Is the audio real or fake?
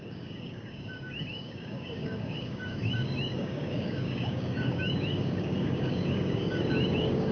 fake